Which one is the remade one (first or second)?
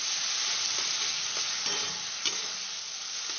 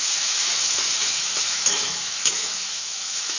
second